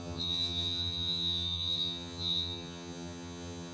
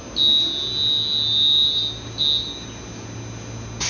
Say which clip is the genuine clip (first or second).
second